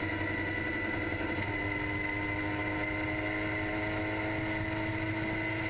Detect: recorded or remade recorded